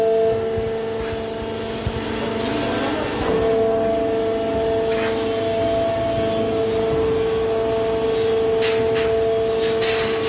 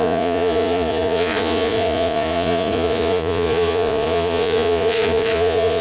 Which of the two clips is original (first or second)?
first